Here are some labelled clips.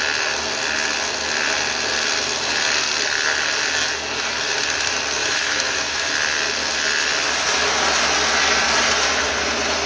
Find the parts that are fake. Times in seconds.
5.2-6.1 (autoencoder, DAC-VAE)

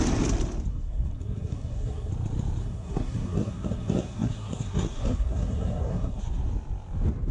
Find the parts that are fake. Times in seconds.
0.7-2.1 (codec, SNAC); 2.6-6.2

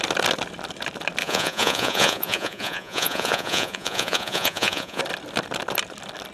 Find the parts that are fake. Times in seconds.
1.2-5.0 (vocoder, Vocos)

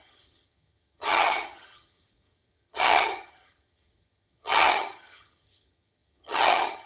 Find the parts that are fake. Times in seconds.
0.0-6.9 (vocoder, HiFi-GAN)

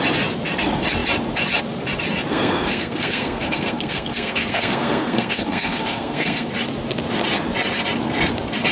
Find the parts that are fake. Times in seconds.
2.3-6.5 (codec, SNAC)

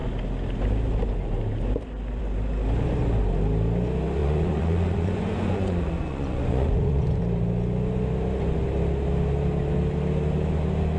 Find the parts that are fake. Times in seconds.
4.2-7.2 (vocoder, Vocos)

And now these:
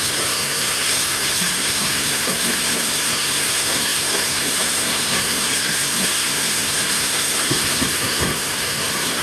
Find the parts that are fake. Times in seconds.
0.0-9.2 (codec, SNAC)